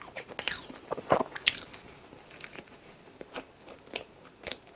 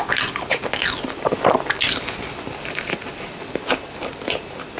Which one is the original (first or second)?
second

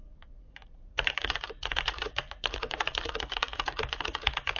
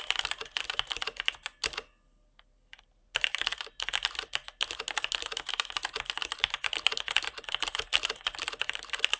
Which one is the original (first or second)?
second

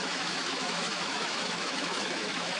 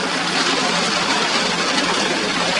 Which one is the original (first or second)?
second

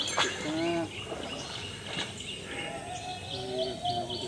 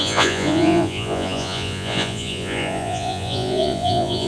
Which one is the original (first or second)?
first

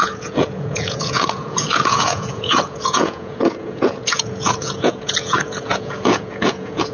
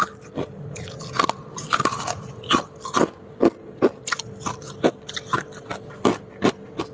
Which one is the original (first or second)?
second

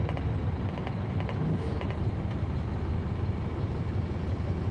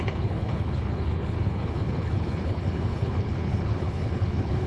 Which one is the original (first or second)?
first